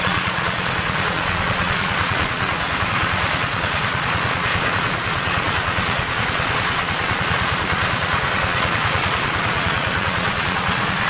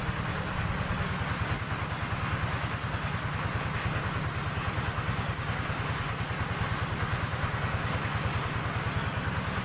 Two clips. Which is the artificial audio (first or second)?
first